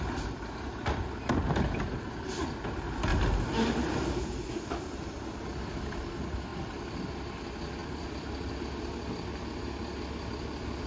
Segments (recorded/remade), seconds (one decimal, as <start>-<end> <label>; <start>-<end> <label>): 0.0-3.1 recorded; 3.1-5.7 remade; 5.7-6.5 recorded; 6.5-7.1 remade; 7.1-7.8 recorded; 7.8-8.5 remade; 8.5-10.9 recorded